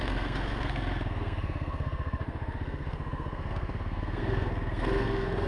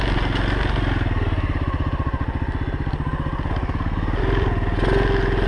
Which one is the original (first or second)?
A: second